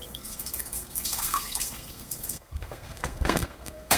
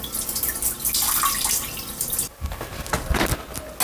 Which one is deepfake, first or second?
first